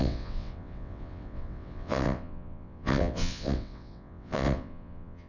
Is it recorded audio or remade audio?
remade